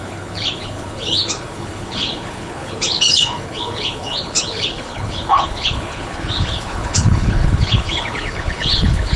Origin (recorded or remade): remade